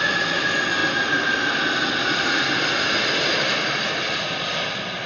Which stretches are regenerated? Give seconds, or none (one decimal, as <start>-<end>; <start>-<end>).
none